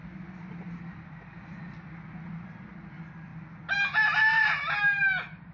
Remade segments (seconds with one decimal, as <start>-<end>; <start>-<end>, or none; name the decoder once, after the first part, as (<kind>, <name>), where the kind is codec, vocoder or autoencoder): none